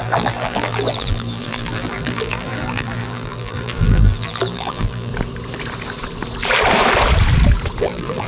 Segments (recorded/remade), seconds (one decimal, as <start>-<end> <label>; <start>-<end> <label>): 0.0-5.1 remade; 5.1-7.8 recorded; 7.8-8.3 remade